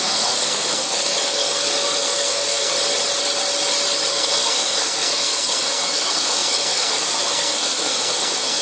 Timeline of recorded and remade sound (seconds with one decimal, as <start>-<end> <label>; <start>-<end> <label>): 0.0-2.7 remade; 2.7-4.1 recorded; 4.1-8.6 remade